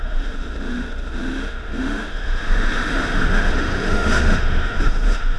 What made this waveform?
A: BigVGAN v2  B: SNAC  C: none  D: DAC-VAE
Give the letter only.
D